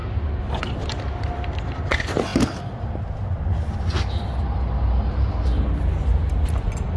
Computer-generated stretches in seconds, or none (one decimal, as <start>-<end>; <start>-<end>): none